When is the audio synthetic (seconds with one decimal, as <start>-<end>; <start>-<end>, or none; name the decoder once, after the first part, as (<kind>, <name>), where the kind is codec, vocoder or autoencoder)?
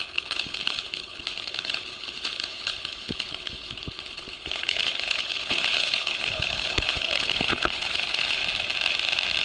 0.0-8.4 (codec, HILCodec)